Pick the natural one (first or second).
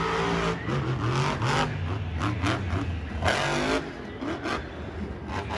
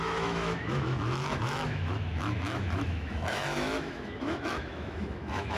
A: first